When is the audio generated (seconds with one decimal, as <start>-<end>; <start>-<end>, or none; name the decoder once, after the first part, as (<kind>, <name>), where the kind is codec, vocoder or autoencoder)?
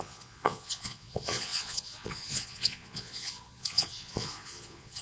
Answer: 0.0-5.0 (vocoder, Vocos)